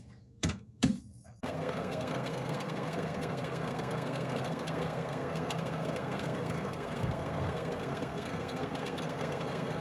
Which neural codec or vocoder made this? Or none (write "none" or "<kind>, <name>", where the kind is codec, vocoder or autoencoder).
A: codec, SNAC